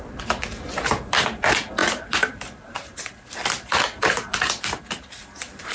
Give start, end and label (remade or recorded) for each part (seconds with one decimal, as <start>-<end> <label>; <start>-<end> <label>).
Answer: 0.0-5.7 remade